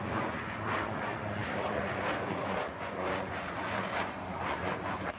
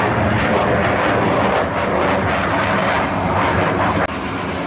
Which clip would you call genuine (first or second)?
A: second